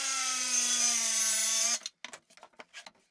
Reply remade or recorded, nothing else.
recorded